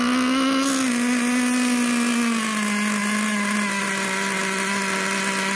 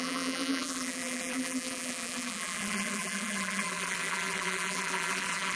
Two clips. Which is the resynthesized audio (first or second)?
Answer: second